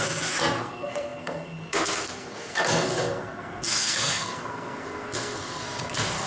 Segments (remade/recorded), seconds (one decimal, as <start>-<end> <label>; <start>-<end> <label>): 0.0-6.3 remade